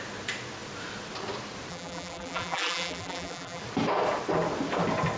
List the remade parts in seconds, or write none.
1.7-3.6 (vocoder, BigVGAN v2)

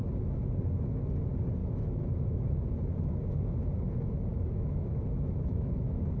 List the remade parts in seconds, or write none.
1.6-2.5 (autoencoder, DAC-VAE); 4.3-6.2

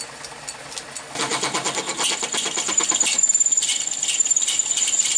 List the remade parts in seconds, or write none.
none

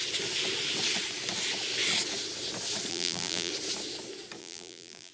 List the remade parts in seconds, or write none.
2.9-3.5 (vocoder, BigVGAN v2); 4.4-5.1

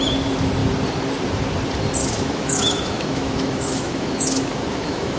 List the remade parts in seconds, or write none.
2.0-5.2 (autoencoder, DAC-VAE)

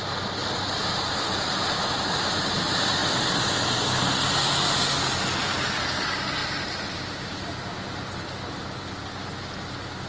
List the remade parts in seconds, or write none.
0.4-1.5 (vocoder, BigVGAN v2); 6.4-8.1

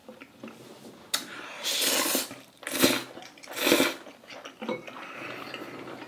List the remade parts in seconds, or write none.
none